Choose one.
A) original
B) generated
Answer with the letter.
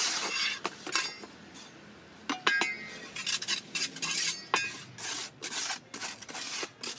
A